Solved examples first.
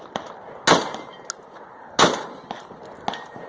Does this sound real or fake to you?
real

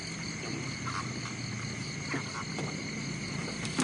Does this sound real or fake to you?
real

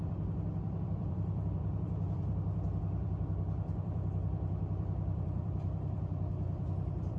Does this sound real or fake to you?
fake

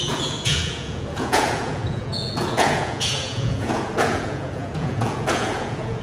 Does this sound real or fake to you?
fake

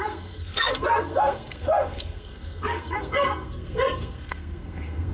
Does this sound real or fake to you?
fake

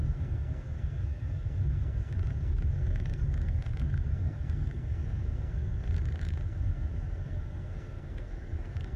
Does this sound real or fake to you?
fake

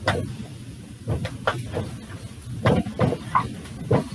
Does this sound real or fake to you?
real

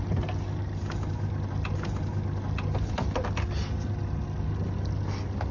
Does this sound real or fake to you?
real